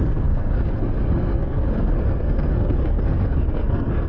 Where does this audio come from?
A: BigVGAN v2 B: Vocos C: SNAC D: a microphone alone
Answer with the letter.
C